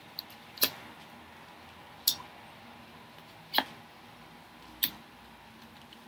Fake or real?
real